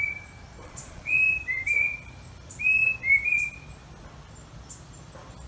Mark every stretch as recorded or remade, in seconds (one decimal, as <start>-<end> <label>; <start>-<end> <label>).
0.0-0.6 recorded; 0.6-1.2 remade; 1.2-5.5 recorded